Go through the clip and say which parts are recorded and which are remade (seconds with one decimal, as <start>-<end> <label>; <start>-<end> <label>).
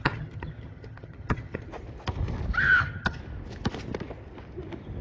0.0-1.7 remade; 1.7-2.8 recorded; 2.8-3.2 remade; 3.2-5.0 recorded